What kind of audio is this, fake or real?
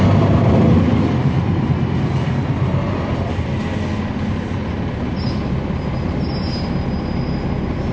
real